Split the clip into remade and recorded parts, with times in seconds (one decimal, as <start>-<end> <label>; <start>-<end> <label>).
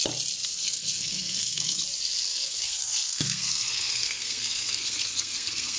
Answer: 0.0-0.4 recorded; 0.4-1.8 remade; 1.8-2.3 recorded; 2.3-5.8 remade